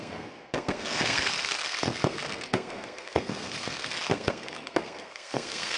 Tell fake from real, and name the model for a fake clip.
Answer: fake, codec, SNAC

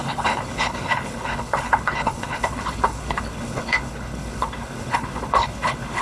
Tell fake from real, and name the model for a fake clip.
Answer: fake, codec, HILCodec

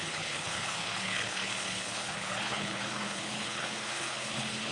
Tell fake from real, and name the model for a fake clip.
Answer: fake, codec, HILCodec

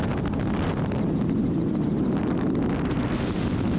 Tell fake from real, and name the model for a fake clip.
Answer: real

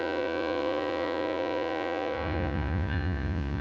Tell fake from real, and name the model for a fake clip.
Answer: fake, vocoder, Vocos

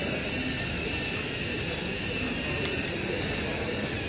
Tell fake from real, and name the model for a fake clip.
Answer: real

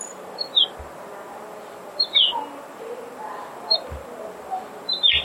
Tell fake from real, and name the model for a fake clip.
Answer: real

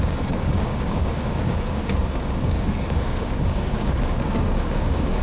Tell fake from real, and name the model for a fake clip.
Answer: fake, codec, DAC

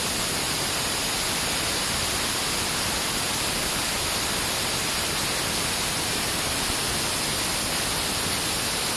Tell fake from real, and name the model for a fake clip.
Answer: real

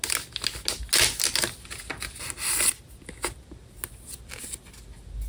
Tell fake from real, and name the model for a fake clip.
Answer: real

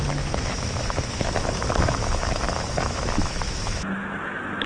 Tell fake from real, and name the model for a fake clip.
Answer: fake, autoencoder, DAC-VAE